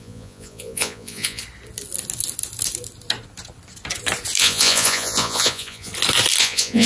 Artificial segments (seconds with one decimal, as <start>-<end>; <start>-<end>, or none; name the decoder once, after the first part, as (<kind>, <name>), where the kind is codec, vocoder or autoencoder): 0.0-1.4 (vocoder, Vocos); 4.4-5.9; 6.4-6.9